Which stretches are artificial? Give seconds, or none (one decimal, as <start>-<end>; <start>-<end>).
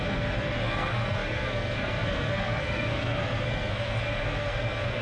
0.0-5.0